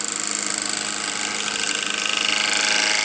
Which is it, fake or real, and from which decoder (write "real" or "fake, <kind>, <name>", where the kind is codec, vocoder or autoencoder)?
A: real